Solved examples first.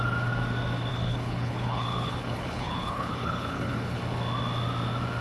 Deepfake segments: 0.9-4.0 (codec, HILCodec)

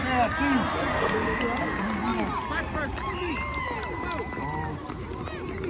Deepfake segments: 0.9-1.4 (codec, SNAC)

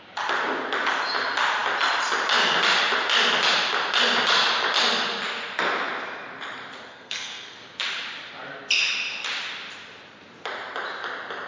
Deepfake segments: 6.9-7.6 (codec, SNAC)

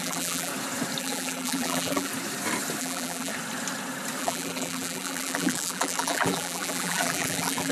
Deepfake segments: 0.0-0.5 (vocoder, BigVGAN v2); 1.0-2.1; 2.8-3.3; 4.2-7.7

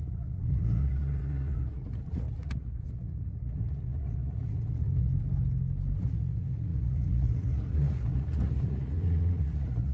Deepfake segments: 0.0-5.1 (vocoder, Vocos); 6.0-9.9